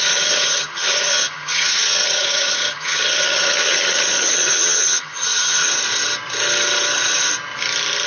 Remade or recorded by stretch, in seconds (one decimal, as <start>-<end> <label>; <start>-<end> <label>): 0.0-5.8 remade; 5.8-8.1 recorded

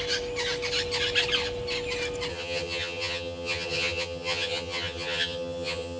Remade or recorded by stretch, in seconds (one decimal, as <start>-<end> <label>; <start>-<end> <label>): 0.0-2.3 recorded; 2.3-6.0 remade

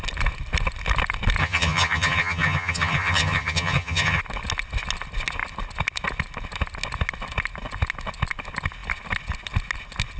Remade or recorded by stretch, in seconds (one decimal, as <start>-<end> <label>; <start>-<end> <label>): 0.0-1.4 recorded; 1.4-4.2 remade; 4.2-10.2 recorded